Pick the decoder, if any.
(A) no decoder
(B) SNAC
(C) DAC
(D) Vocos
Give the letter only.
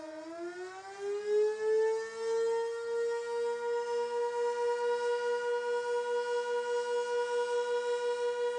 A